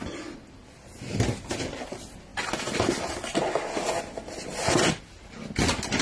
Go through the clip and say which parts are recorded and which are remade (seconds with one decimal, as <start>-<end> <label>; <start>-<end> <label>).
0.0-6.0 recorded